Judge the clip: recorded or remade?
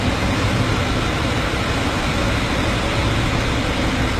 recorded